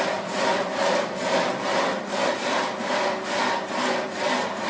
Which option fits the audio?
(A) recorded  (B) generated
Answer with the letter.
A